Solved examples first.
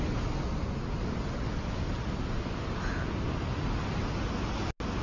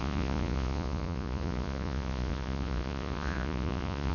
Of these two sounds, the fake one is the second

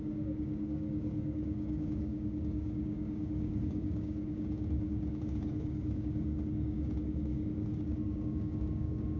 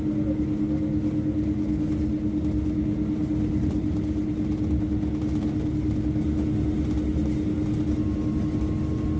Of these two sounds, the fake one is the first